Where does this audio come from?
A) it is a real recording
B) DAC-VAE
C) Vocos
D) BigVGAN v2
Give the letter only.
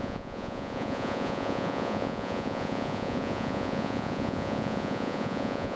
C